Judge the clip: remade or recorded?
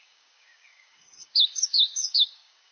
remade